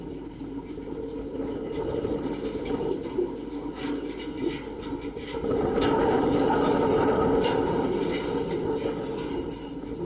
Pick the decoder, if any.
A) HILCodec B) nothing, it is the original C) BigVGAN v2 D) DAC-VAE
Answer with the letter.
B